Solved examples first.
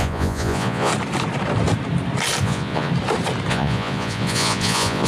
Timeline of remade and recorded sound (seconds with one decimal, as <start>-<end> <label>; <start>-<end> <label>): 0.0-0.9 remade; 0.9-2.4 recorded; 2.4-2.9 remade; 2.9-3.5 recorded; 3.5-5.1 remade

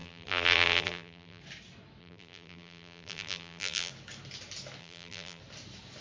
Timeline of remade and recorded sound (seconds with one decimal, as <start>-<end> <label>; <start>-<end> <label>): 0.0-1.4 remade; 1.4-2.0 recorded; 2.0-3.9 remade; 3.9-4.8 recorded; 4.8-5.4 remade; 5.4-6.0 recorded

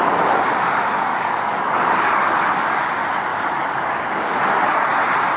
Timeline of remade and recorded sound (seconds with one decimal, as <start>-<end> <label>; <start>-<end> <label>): 0.0-1.1 recorded; 1.1-2.9 remade; 2.9-3.3 recorded; 3.3-4.4 remade; 4.4-5.4 recorded